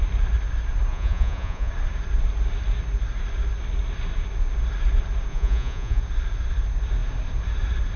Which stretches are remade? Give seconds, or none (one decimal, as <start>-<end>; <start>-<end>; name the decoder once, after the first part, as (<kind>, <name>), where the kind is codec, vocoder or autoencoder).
0.9-1.7 (vocoder, Vocos); 5.3-6.0